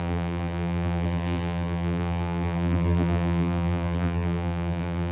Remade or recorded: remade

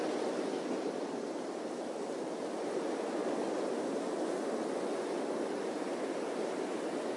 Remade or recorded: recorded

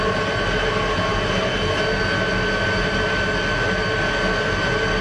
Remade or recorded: recorded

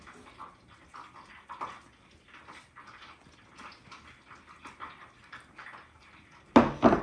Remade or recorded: recorded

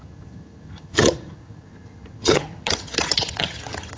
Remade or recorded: remade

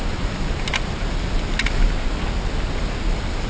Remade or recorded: recorded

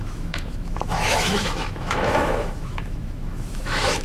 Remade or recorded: remade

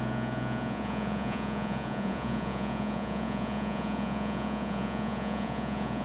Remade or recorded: remade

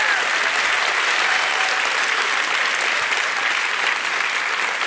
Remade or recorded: recorded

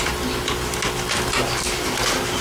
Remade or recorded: recorded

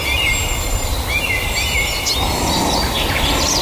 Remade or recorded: recorded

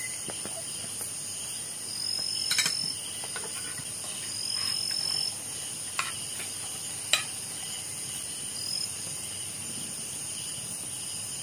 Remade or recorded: recorded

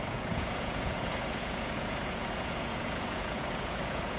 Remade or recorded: remade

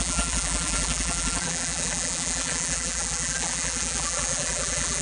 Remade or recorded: remade